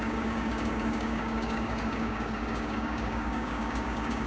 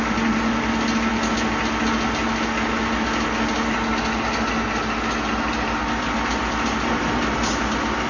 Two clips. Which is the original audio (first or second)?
second